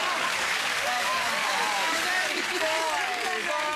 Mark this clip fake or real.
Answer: fake